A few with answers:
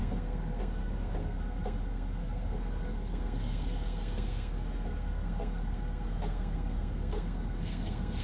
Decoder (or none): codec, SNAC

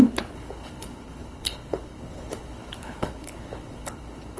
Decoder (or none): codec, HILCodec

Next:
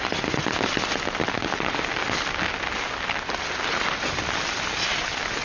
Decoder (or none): none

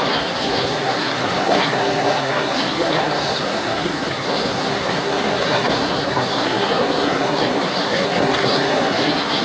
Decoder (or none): codec, SNAC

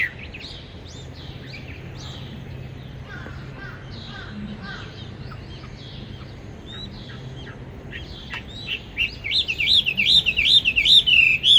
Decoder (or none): none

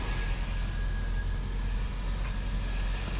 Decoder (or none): none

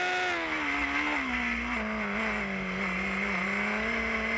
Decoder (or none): none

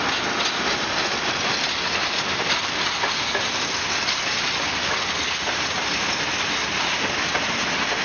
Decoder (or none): none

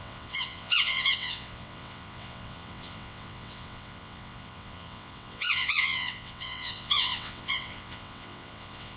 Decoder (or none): vocoder, WaveNeXt